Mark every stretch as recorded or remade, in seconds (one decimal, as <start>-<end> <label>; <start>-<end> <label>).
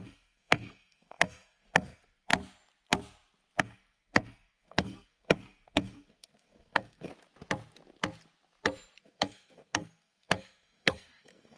0.0-2.3 remade; 2.3-3.6 recorded; 3.6-7.1 remade; 7.1-9.0 recorded; 9.0-11.6 remade